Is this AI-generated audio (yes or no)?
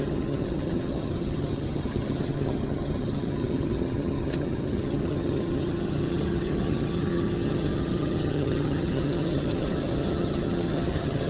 yes